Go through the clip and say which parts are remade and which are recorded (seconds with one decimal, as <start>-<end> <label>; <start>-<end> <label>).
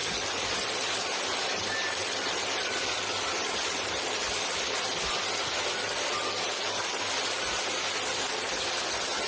0.0-3.9 remade; 3.9-9.3 recorded